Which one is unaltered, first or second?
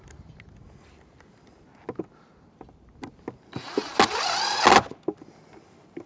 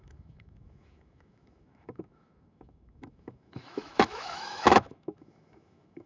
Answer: first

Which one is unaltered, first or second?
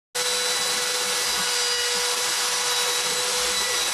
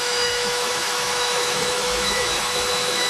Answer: first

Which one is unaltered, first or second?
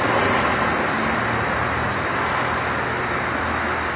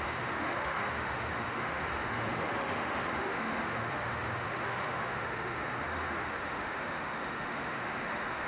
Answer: first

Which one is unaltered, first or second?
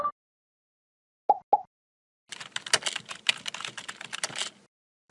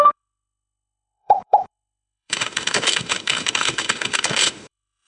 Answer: first